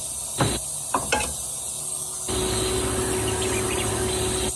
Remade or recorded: recorded